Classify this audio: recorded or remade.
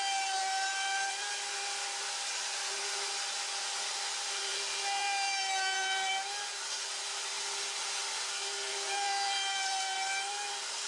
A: remade